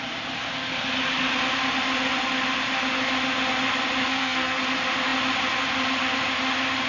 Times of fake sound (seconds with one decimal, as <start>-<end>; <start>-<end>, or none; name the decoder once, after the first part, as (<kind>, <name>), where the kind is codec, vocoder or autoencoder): 4.1-4.6 (codec, SNAC)